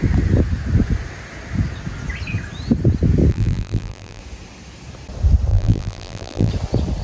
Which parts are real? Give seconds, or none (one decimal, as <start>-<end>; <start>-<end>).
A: 0.0-3.3; 4.2-5.5; 6.5-7.0

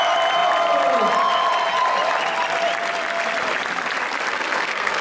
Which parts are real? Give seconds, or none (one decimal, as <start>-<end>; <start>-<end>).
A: 0.0-4.3